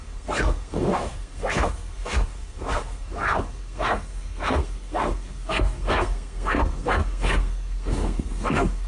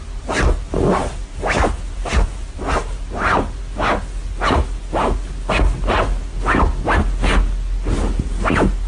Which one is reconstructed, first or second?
first